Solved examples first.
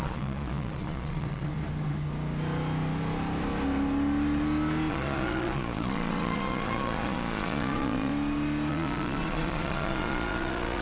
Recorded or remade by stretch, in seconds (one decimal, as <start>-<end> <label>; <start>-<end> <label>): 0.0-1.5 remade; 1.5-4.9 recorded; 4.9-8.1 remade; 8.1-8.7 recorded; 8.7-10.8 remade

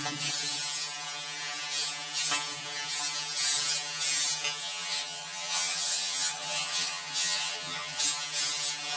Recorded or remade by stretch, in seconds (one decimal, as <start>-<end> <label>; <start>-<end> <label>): 0.0-4.6 recorded; 4.6-8.0 remade; 8.0-9.0 recorded

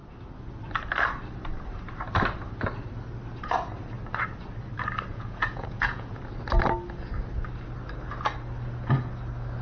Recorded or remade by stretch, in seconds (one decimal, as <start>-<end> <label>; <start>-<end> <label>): 0.0-5.1 recorded; 5.1-6.2 remade; 6.2-9.6 recorded

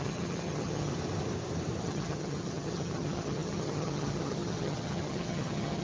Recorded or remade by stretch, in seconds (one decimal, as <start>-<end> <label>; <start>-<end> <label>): 0.0-0.9 remade; 0.9-1.8 recorded; 1.8-5.8 remade